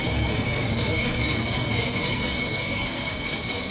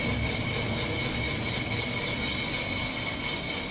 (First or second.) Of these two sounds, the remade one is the first